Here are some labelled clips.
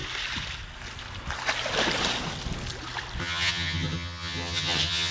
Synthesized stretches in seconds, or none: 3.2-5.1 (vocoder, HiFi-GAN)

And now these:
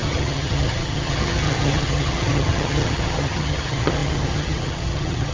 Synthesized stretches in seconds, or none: 0.0-5.3 (vocoder, HiFi-GAN)

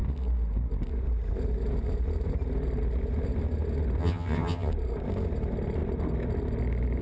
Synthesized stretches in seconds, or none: 4.0-4.7 (vocoder, HiFi-GAN)

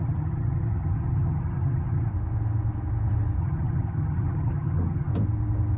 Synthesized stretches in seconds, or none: 0.0-2.1 (vocoder, HiFi-GAN); 3.4-5.1

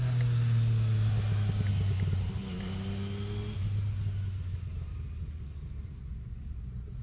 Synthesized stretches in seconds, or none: none

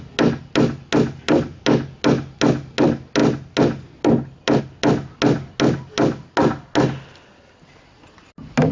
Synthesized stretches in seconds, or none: none